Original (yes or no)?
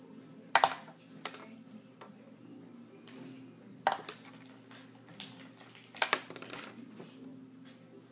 yes